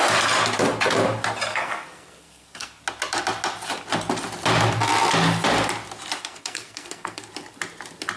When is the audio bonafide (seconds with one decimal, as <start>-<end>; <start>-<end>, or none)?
0.0-1.5; 2.8-6.2; 7.3-8.2